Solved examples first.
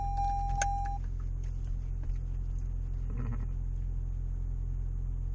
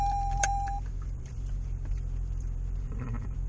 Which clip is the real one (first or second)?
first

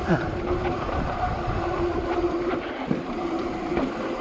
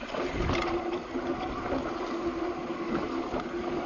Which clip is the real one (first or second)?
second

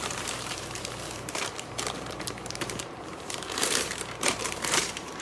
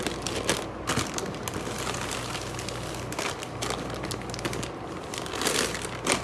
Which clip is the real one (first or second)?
second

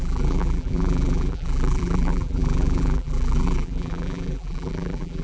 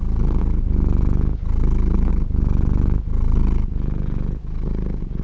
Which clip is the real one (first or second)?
second